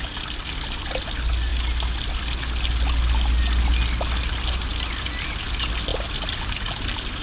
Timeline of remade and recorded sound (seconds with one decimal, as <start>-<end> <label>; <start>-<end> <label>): 0.0-7.2 recorded

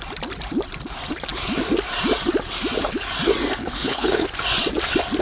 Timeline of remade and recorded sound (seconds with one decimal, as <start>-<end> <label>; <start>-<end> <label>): 0.0-3.6 recorded; 3.6-4.3 remade; 4.3-5.2 recorded

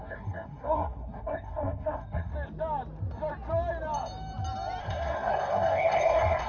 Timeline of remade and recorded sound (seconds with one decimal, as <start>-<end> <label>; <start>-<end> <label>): 0.0-2.3 remade; 2.3-4.8 recorded; 4.8-6.5 remade

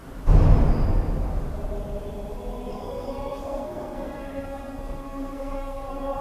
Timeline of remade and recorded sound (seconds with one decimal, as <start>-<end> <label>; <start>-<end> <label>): 0.0-2.7 recorded; 2.7-6.2 remade